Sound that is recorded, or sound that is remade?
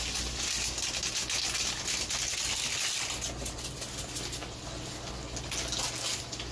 recorded